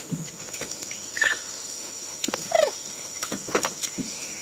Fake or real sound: fake